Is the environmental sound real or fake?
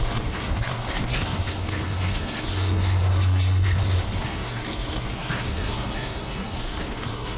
fake